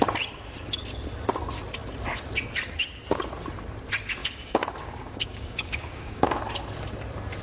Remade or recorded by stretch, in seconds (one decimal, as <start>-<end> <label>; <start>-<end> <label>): 0.0-4.2 recorded; 4.2-6.4 remade; 6.4-7.4 recorded